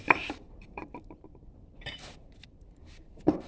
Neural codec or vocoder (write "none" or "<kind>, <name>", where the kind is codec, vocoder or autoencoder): vocoder, BigVGAN v2